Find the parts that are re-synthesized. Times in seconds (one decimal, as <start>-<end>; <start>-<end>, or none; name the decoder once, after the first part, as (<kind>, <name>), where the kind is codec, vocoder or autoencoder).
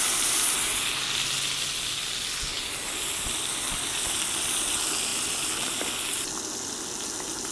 none